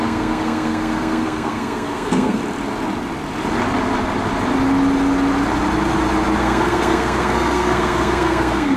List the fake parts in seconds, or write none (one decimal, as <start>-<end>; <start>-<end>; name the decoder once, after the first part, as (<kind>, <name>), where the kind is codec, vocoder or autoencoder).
0.0-2.4 (codec, SNAC); 6.4-8.8